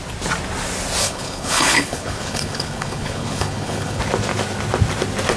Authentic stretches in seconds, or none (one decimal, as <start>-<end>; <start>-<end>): 0.0-1.0; 4.0-5.4